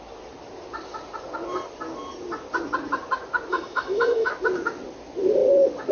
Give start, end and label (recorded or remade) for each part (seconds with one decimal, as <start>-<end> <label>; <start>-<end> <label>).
0.0-3.5 recorded; 3.5-4.3 remade; 4.3-5.9 recorded